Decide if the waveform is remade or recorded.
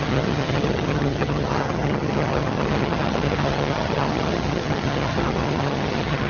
remade